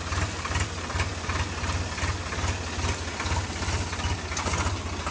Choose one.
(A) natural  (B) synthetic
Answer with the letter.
A